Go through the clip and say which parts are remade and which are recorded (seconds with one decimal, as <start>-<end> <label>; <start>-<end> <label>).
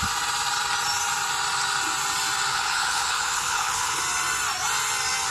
0.0-2.5 recorded; 2.5-4.0 remade; 4.0-5.3 recorded